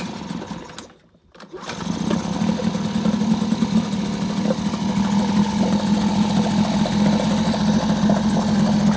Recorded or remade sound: recorded